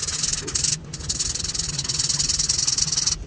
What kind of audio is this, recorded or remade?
recorded